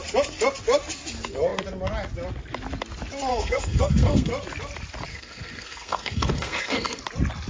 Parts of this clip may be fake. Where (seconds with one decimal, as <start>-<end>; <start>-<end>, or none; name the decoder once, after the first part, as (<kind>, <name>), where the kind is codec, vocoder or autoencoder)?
3.3-4.3 (codec, SNAC); 5.1-7.0